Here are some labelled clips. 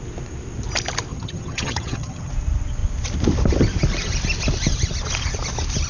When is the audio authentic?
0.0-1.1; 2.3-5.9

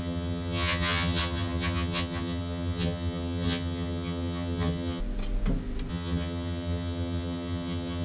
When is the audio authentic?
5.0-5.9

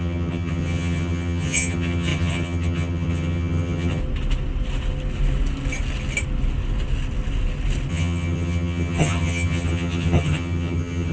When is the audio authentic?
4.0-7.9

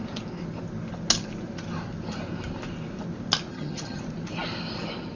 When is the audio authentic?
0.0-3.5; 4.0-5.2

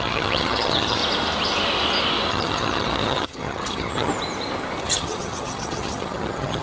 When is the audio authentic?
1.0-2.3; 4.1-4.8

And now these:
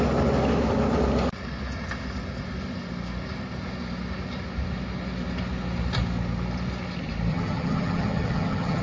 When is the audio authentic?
0.0-7.3

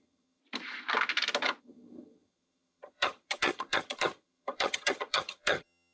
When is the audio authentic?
0.4-1.6

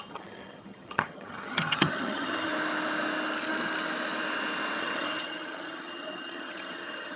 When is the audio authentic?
2.5-4.8